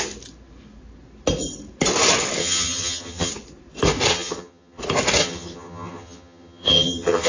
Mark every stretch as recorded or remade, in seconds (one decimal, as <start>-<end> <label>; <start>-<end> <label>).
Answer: 0.0-2.4 recorded; 2.4-3.3 remade; 3.3-4.1 recorded; 4.1-4.8 remade; 4.8-5.2 recorded; 5.2-7.3 remade